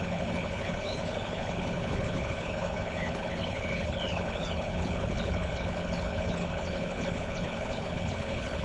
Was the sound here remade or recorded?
remade